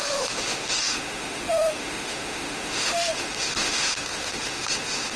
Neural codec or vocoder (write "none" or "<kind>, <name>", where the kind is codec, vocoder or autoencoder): autoencoder, DAC-VAE